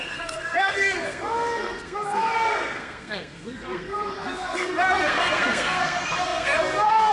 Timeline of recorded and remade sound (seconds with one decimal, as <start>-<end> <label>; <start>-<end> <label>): 0.0-7.1 remade